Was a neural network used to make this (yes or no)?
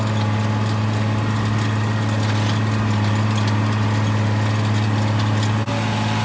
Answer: no